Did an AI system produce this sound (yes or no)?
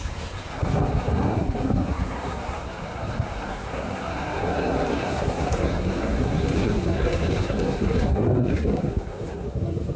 yes